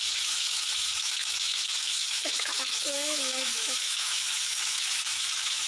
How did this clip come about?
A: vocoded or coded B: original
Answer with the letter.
A